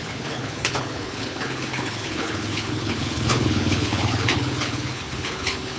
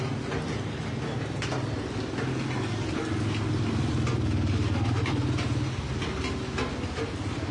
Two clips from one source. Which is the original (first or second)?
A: second